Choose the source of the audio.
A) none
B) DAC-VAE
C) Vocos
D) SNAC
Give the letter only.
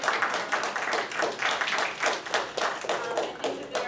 A